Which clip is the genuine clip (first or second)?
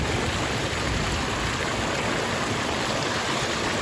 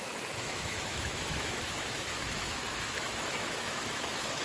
first